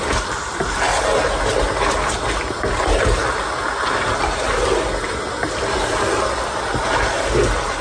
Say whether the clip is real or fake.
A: real